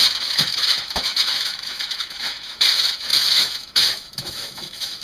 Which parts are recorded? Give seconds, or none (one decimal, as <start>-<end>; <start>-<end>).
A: none